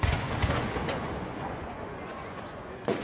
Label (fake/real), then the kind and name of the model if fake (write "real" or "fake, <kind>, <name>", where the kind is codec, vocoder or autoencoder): fake, vocoder, Vocos